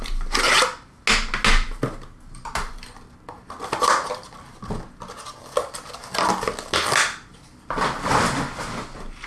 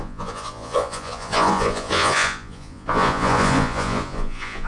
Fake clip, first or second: second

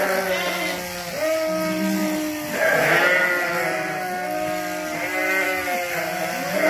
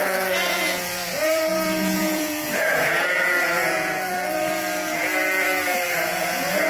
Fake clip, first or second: second